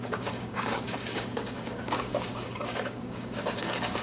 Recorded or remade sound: remade